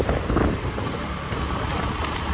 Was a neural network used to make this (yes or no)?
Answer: no